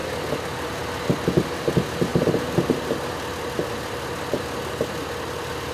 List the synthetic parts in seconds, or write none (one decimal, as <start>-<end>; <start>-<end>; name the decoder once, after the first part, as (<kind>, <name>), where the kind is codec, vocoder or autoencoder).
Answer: none